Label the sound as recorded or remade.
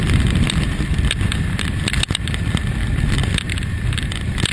recorded